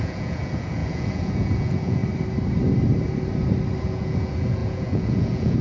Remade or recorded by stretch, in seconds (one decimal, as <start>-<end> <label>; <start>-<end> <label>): 0.0-2.0 remade; 2.0-3.8 recorded; 3.8-5.6 remade